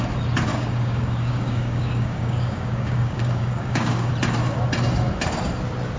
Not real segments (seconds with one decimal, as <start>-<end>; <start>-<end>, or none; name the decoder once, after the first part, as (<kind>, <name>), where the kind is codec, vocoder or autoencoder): 0.5-4.1 (codec, DAC)